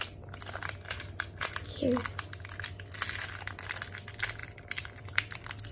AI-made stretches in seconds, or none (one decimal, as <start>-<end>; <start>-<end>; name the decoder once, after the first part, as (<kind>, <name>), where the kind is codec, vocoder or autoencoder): 4.4-5.7 (vocoder, BigVGAN v2)